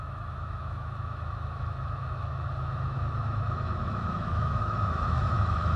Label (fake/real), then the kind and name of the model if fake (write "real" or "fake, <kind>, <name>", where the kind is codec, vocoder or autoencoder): fake, autoencoder, DAC-VAE